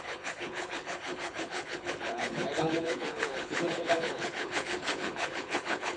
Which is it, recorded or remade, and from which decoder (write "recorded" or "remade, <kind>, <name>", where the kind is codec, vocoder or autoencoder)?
remade, codec, HILCodec